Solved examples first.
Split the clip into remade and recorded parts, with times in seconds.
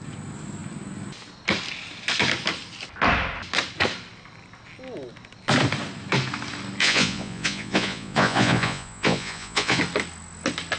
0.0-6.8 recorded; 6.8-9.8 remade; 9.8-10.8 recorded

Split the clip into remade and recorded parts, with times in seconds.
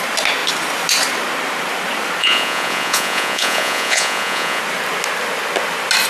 0.0-2.2 recorded; 2.2-4.6 remade; 4.6-6.1 recorded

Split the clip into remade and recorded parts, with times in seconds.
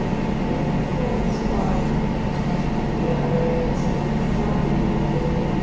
0.0-0.9 recorded; 0.9-1.5 remade; 1.5-5.6 recorded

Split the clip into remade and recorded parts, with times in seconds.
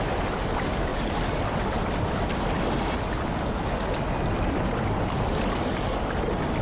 0.0-6.6 recorded